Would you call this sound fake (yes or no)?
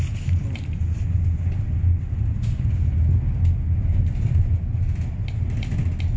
no